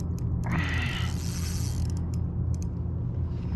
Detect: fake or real real